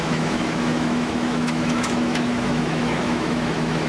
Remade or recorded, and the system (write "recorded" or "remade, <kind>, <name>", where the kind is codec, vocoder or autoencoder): remade, autoencoder, DAC-VAE